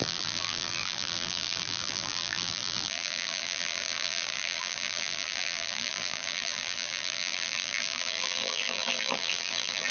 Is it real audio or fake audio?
fake